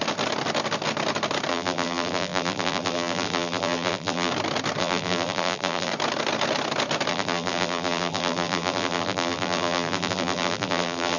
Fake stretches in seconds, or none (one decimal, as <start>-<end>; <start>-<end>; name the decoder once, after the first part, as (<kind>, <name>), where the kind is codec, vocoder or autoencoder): 1.5-4.3 (vocoder, BigVGAN v2); 4.8-5.9; 7.1-11.2